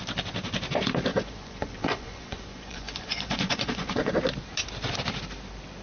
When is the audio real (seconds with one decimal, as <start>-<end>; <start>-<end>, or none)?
0.0-1.1; 4.1-5.8